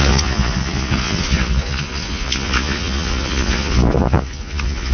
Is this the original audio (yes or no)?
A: no